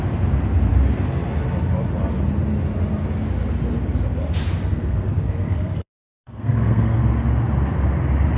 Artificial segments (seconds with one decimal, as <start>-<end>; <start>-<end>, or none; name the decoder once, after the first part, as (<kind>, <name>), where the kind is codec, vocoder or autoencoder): 4.7-7.0 (codec, SNAC)